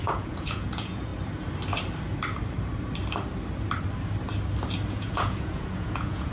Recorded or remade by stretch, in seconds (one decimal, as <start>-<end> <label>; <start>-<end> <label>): 0.0-1.1 remade; 1.1-4.9 recorded; 4.9-6.3 remade